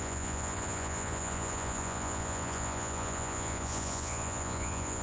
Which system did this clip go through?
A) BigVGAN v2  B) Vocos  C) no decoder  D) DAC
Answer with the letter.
B